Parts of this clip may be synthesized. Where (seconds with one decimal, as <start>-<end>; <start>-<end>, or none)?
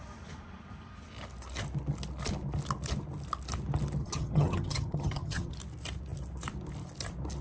4.0-5.5